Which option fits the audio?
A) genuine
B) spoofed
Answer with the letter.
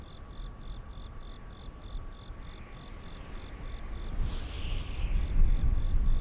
A